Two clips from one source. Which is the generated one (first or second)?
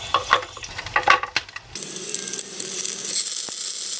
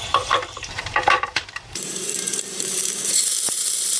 second